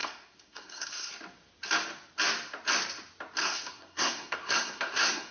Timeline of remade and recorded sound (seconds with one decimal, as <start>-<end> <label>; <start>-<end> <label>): 0.0-1.1 remade; 1.1-3.4 recorded; 3.4-5.3 remade